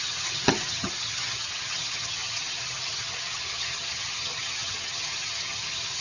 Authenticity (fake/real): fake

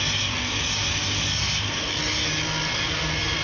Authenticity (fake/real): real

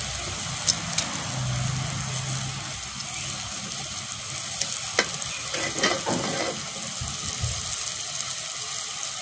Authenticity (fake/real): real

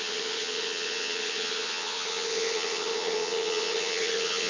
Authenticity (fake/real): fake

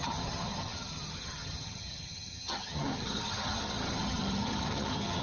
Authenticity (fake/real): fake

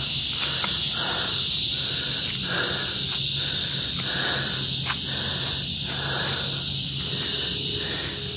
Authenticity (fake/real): real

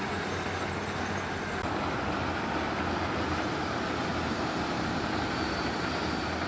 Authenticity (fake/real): real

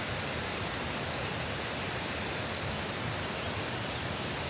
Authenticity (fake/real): real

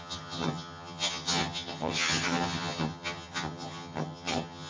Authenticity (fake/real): fake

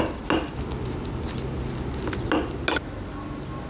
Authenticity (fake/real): real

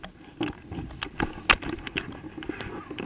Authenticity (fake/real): real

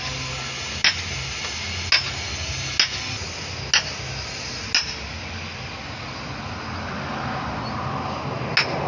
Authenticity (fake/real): real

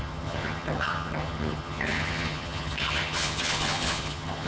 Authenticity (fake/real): fake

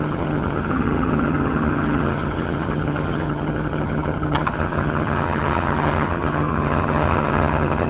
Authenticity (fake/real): fake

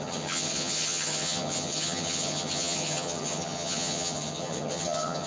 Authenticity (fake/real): fake